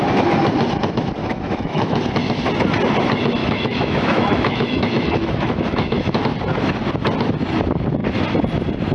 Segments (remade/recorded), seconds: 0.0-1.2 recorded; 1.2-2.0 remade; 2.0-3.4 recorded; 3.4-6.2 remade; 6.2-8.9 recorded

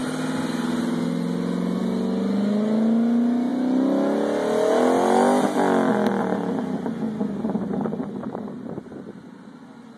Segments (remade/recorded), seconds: 0.0-10.0 recorded